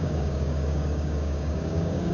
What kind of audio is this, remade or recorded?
remade